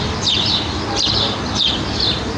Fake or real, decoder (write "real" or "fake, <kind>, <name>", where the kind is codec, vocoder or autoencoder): real